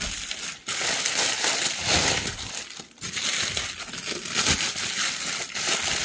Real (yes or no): yes